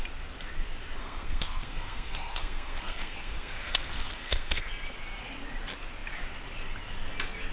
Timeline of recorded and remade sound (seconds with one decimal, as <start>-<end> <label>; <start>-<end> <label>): 0.0-1.0 recorded; 1.0-4.7 remade; 4.7-7.5 recorded